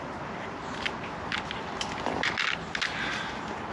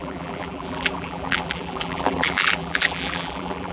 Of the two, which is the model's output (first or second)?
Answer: second